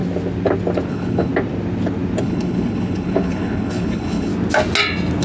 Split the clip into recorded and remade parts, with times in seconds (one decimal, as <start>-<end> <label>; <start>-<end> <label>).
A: 0.0-0.9 recorded; 0.9-1.3 remade; 1.3-2.2 recorded; 2.2-4.3 remade; 4.3-5.2 recorded